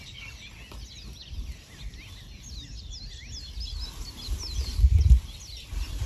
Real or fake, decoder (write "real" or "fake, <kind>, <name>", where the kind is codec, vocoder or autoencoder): real